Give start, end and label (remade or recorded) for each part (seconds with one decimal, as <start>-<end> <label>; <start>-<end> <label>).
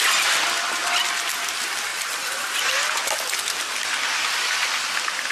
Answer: 0.0-5.3 recorded